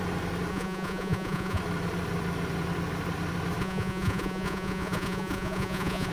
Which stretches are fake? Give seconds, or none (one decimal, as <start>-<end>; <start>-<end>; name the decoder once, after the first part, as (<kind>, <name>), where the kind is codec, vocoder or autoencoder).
0.5-1.6 (vocoder, Vocos); 3.6-6.1